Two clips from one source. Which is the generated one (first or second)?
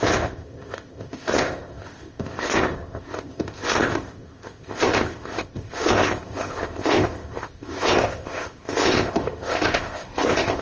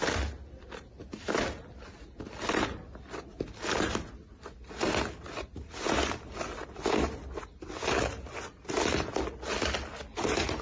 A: first